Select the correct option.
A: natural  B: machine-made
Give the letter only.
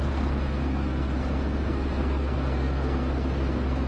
B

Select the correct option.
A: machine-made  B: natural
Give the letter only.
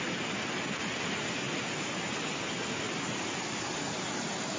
B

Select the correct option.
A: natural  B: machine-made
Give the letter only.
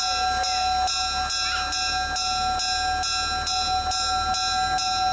A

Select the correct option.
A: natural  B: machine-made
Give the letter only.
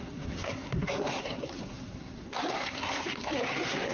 B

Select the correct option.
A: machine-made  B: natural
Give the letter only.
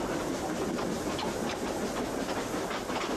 B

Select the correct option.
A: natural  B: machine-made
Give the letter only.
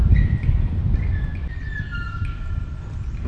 A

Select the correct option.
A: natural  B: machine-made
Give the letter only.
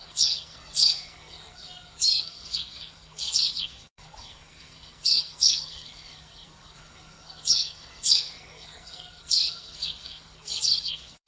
B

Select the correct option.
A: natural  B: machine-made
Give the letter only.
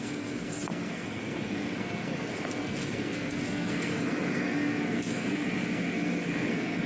B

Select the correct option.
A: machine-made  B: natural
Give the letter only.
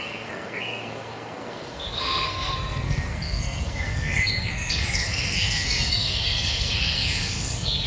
A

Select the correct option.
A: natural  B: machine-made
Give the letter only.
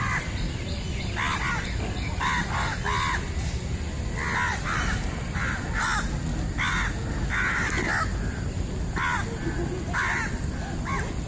A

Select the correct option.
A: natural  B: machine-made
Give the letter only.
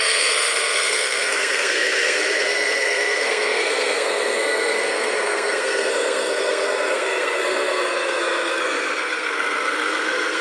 B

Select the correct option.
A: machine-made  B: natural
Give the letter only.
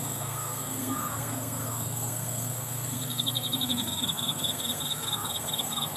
A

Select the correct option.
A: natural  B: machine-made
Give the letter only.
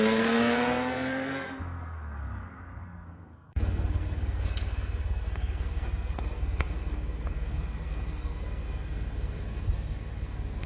B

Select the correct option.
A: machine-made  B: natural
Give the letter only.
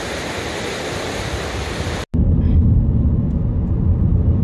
B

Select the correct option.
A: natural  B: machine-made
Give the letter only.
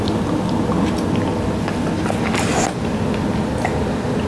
A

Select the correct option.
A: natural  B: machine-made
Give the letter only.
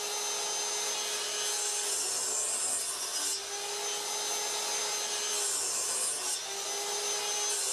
A